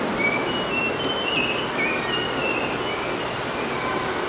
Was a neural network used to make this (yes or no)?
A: no